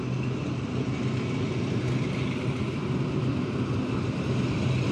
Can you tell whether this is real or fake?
real